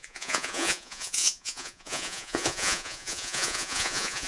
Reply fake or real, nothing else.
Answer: fake